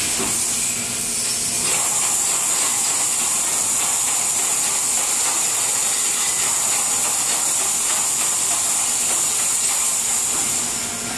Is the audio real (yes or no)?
yes